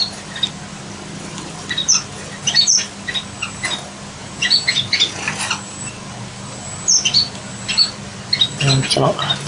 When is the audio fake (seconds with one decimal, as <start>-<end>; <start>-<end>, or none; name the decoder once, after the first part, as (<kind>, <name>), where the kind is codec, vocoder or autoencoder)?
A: 4.2-5.1 (vocoder, Vocos)